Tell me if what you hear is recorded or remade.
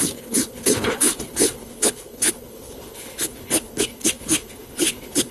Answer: remade